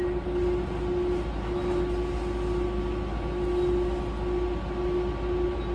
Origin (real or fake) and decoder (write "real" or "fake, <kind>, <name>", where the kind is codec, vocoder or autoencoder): real